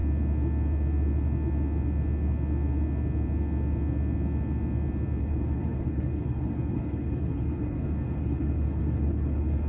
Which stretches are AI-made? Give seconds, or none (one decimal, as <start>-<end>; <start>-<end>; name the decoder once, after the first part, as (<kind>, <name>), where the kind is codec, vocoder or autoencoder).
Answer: 5.2-9.7 (codec, HILCodec)